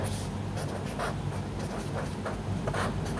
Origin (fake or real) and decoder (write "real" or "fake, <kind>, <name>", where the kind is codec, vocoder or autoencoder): real